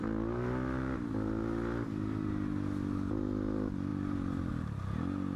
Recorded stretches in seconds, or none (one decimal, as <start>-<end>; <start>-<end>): 0.0-5.4